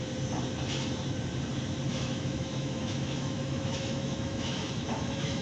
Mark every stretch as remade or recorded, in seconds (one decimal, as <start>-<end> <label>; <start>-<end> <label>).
0.0-1.9 recorded; 1.9-5.4 remade